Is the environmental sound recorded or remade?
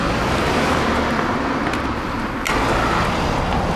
recorded